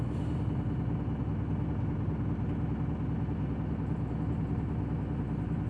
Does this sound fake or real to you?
real